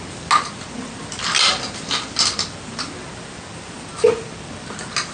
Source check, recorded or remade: recorded